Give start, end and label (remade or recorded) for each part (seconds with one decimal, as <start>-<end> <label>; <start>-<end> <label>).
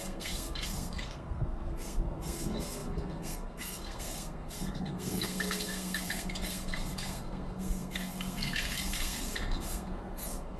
0.0-10.6 remade